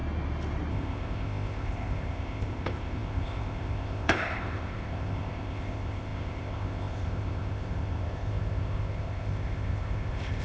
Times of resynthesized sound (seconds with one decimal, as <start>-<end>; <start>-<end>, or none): 0.7-10.4